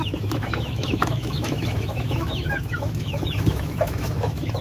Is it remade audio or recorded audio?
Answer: remade